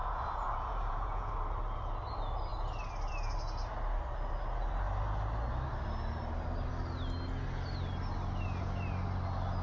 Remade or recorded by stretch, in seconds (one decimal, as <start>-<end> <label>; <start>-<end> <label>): 0.0-1.3 remade; 1.3-9.6 recorded